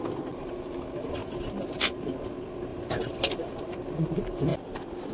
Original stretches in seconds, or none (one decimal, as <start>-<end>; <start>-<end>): 0.0-2.7; 3.2-5.1